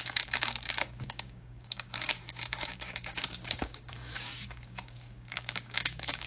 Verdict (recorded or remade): remade